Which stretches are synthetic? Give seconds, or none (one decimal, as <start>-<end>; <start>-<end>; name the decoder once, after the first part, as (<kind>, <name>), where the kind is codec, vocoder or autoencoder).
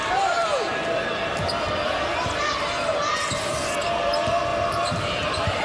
4.5-5.6 (vocoder, BigVGAN v2)